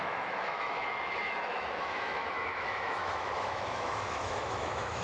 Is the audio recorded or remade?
remade